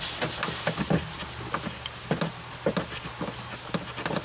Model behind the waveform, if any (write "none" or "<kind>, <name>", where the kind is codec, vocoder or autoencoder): none